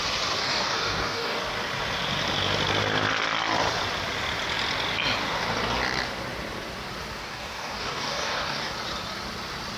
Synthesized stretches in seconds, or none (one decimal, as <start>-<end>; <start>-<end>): 0.4-1.4; 7.2-8.7